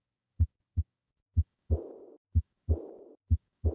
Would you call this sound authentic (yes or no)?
no